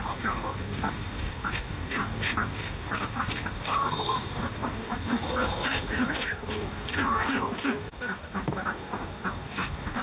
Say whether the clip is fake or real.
fake